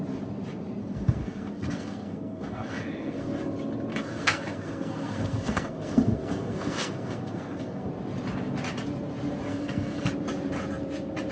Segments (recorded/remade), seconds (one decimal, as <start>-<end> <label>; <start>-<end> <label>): 0.0-0.8 recorded; 0.8-3.3 remade; 3.3-3.9 recorded; 3.9-7.9 remade; 7.9-9.5 recorded; 9.5-10.1 remade; 10.1-11.3 recorded